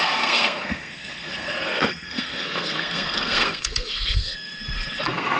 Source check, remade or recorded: remade